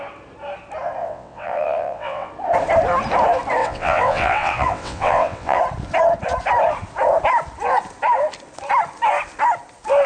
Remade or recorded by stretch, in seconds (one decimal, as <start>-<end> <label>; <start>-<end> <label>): 0.0-1.0 recorded; 1.0-2.3 remade; 2.3-3.6 recorded; 3.6-5.6 remade; 5.6-10.1 recorded